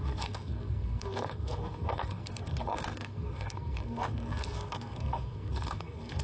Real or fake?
fake